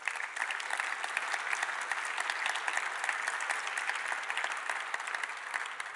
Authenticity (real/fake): real